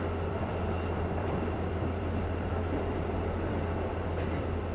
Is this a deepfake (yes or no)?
yes